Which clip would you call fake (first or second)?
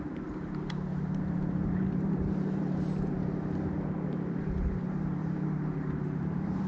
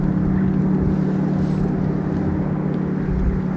first